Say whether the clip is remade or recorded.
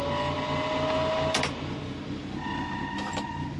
recorded